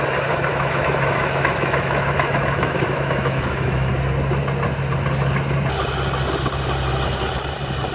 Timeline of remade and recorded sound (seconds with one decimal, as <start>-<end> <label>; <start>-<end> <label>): 0.0-0.5 recorded; 0.5-3.9 remade; 3.9-7.9 recorded